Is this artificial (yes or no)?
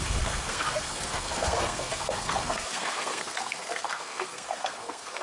yes